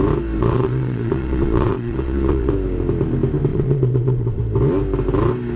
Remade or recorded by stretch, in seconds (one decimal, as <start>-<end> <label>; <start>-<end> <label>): 0.0-0.4 recorded; 0.4-2.5 remade; 2.5-3.5 recorded; 3.5-4.4 remade; 4.4-5.6 recorded